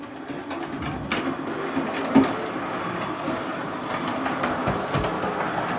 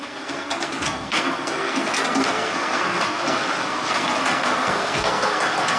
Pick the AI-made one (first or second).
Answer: second